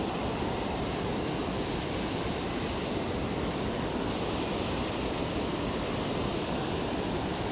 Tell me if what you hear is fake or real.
fake